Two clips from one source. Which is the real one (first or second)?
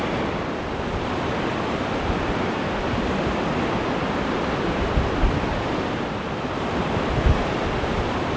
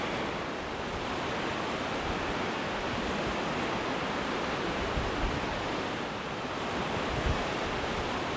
second